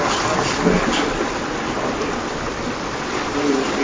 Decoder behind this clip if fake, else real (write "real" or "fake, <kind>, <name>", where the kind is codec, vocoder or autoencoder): real